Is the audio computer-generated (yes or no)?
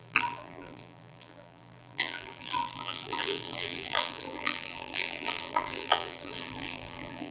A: yes